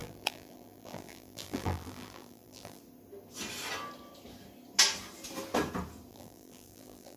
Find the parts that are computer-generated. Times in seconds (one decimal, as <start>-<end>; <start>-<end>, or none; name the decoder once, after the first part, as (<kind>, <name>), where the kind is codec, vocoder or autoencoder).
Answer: 0.0-2.8 (vocoder, BigVGAN v2); 6.1-7.2